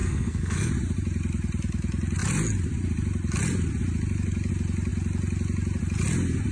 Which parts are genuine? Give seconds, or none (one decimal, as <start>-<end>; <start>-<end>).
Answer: 0.7-6.5

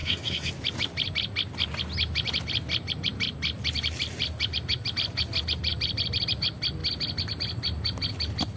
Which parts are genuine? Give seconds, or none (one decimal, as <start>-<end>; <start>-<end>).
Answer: 0.5-8.6

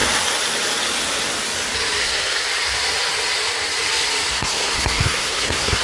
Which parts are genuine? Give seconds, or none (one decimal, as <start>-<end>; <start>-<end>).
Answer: 0.0-2.0; 2.4-4.3

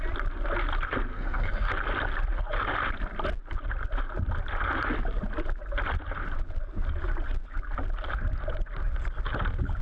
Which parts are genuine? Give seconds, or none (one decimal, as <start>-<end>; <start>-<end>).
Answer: 0.0-1.1; 1.7-9.8

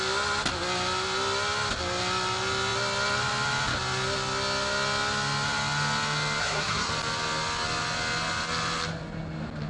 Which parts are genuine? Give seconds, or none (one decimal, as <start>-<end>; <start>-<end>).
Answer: 0.0-6.4; 6.9-9.7

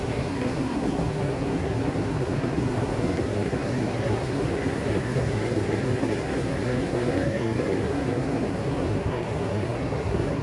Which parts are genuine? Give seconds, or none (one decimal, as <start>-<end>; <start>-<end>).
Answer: none